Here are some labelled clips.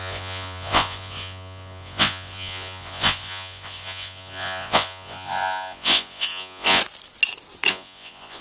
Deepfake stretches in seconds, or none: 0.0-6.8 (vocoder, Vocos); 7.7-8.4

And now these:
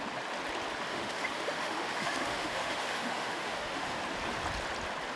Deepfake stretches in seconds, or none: 0.9-4.0 (autoencoder, DAC-VAE)

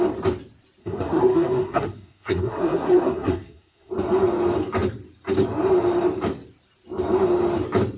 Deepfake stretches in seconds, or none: 0.8-3.9 (codec, SNAC)

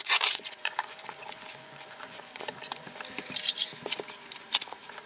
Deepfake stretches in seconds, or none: 0.0-3.0 (vocoder, Vocos)

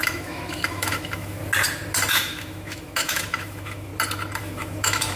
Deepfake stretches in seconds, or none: 0.0-1.4 (autoencoder, DAC-VAE); 2.1-3.9; 4.4-5.2